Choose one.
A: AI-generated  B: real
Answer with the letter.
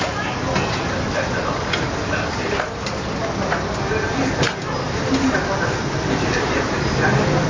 B